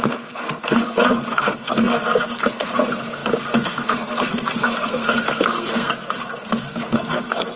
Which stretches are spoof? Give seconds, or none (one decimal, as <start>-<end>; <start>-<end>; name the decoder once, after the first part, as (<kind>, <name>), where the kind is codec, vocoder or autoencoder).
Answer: 0.0-7.6 (codec, SNAC)